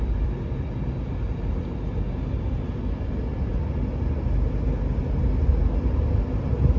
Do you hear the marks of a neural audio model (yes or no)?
no